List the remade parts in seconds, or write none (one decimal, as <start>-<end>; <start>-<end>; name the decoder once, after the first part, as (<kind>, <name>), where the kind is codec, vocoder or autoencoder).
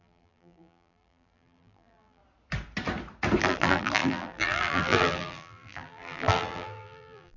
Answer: 0.0-2.2 (vocoder, BigVGAN v2); 3.4-7.4